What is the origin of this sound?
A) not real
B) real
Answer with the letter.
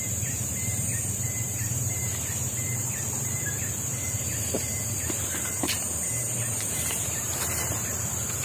A